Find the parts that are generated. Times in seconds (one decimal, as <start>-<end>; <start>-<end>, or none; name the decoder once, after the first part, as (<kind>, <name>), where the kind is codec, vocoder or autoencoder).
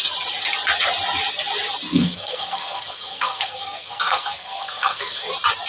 1.9-5.3 (codec, SNAC)